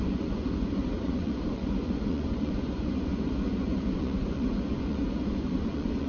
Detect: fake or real fake